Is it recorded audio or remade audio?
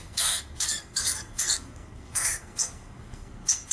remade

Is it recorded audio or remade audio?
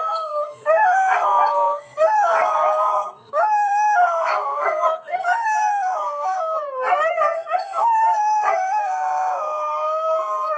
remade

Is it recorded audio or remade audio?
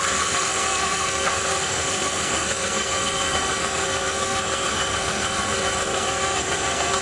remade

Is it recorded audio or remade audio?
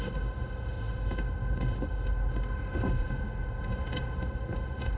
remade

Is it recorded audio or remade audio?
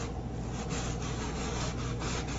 recorded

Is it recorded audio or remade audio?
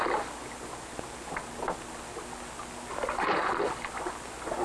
recorded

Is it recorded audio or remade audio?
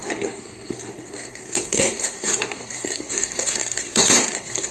remade